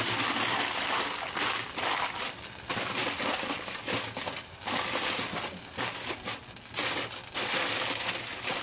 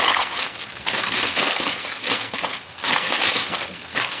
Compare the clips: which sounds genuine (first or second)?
first